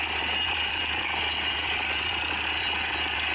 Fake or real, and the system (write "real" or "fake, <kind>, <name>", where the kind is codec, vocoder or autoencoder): real